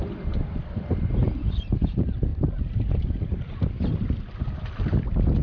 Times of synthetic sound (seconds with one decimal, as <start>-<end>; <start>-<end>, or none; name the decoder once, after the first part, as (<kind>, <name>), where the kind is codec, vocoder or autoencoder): 0.0-2.3 (vocoder, BigVGAN v2); 2.9-5.4